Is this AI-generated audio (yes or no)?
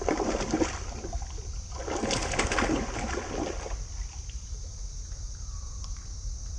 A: no